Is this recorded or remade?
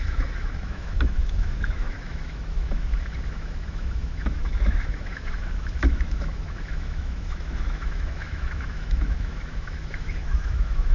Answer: remade